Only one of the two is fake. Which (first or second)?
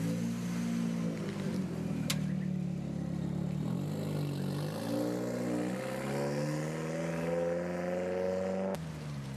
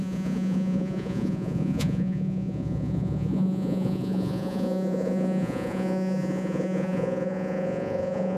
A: second